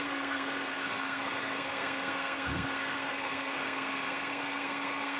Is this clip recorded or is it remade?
remade